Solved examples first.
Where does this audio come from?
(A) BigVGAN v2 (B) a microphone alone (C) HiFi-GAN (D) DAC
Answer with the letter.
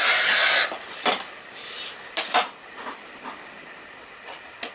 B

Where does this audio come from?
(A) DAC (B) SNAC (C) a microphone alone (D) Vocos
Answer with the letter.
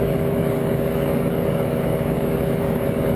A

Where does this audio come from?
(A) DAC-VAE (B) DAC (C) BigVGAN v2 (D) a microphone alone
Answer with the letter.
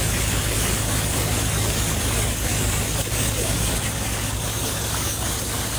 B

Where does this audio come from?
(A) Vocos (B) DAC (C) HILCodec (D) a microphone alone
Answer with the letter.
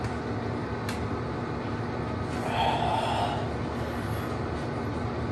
D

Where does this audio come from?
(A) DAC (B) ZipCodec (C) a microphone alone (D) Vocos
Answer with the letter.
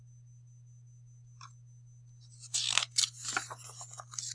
C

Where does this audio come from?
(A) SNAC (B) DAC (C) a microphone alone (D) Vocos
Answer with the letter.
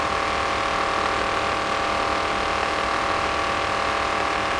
C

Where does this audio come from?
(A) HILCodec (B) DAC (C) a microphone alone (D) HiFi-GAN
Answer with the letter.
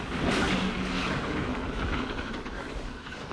B